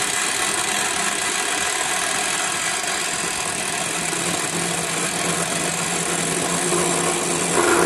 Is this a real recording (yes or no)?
yes